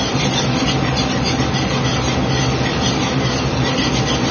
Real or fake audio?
real